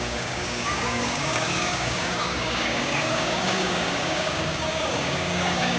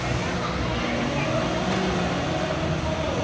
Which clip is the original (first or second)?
second